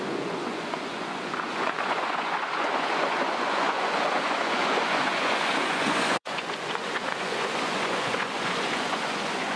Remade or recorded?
remade